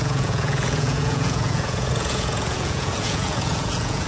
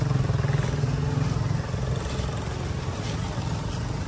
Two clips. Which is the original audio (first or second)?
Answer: second